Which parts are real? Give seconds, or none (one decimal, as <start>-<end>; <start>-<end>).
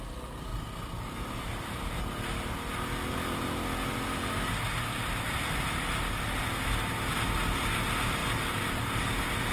0.0-0.5; 1.3-8.2; 9.0-9.5